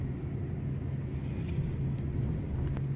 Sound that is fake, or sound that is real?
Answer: real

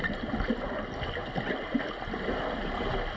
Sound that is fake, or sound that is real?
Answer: real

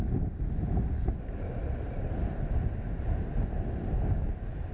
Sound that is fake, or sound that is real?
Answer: real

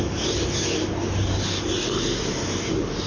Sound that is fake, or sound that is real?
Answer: real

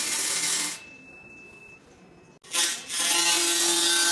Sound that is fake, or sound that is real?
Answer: real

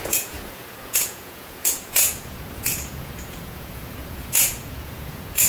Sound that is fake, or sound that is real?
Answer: fake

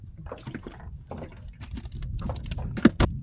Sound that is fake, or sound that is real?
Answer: real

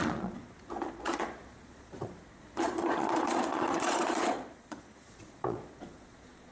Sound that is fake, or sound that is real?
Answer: fake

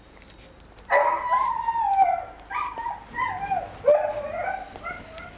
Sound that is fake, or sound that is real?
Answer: real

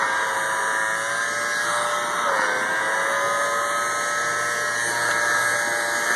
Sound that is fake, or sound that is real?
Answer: real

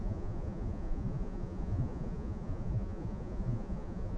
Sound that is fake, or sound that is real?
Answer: fake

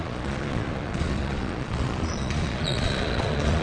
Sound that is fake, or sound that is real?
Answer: fake